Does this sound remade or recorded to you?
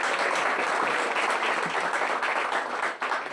recorded